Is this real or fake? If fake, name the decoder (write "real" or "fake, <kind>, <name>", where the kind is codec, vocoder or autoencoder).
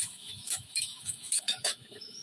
fake, autoencoder, DAC-VAE